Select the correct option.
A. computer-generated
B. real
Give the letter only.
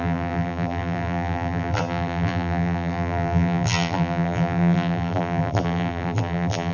A